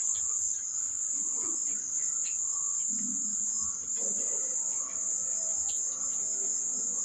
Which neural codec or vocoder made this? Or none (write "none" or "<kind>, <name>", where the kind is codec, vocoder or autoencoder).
none